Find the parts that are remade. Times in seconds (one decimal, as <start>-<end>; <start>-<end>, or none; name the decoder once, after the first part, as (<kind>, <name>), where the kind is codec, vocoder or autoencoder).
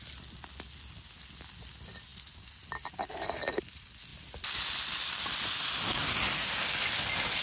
none